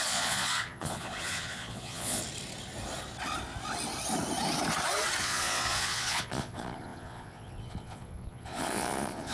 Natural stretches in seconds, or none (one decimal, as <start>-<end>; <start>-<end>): 2.2-5.2